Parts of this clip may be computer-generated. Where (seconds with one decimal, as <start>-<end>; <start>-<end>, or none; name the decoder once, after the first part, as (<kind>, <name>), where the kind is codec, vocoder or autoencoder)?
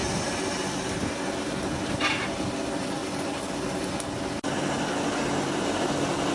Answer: none